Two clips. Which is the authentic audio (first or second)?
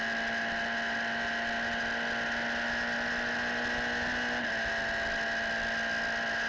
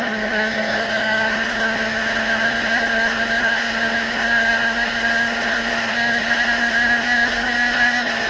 first